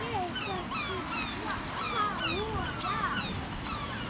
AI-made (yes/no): no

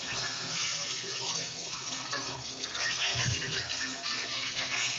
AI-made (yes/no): yes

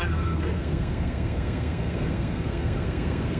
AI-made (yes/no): yes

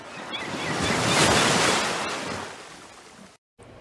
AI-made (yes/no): no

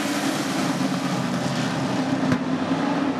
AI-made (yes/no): no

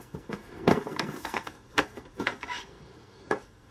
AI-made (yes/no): yes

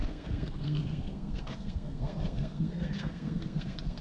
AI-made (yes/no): yes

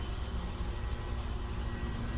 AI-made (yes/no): no